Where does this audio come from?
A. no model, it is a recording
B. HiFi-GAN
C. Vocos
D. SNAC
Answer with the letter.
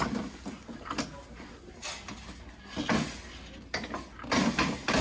A